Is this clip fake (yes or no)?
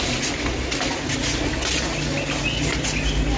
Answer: no